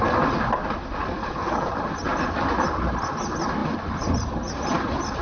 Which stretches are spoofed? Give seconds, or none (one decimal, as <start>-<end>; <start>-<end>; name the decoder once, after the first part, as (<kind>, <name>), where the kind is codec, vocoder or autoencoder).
1.2-1.8 (codec, HILCodec)